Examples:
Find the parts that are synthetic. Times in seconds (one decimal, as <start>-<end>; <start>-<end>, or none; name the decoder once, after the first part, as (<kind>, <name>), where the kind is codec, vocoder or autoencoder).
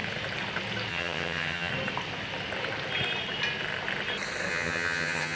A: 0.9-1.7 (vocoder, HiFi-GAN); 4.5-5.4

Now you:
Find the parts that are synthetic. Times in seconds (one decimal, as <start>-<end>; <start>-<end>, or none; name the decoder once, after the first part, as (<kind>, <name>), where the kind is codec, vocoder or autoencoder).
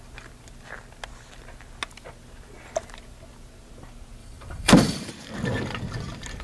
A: 4.2-5.1 (vocoder, BigVGAN v2)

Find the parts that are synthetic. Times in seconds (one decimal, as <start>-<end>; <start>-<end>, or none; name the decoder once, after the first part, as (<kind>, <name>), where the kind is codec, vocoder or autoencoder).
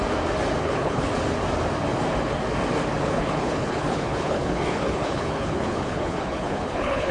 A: 0.6-1.1 (codec, HILCodec); 3.0-7.1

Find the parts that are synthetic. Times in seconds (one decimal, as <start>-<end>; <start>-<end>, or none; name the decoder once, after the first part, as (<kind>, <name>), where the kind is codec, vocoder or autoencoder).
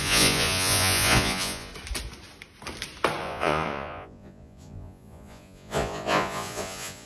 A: 0.0-1.7 (vocoder, Vocos); 3.2-7.1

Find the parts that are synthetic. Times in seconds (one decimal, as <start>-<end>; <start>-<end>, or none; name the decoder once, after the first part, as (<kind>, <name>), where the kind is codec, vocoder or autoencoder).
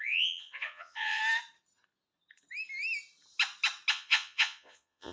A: 0.0-1.2 (vocoder, Vocos); 3.9-5.1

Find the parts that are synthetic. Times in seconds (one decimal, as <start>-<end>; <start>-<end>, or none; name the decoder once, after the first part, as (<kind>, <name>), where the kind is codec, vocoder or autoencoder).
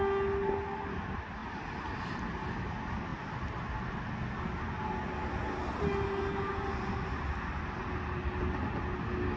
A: none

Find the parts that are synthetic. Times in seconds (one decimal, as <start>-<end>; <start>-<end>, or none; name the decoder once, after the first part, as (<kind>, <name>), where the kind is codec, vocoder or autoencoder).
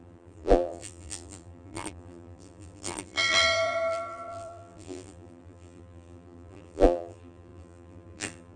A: 0.0-8.6 (vocoder, BigVGAN v2)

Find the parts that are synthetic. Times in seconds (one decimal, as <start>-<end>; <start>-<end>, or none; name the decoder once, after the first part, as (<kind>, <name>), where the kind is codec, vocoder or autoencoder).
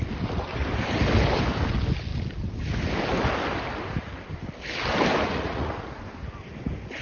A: 5.2-6.0 (vocoder, Vocos)